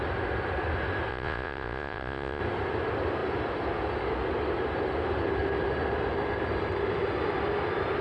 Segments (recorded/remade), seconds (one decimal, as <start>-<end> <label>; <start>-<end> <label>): 0.0-1.1 recorded; 1.1-2.4 remade; 2.4-8.0 recorded